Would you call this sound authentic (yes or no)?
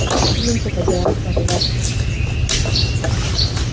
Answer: yes